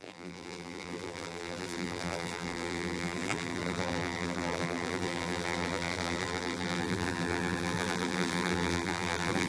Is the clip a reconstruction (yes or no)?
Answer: yes